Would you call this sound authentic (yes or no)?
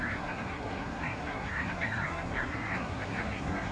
no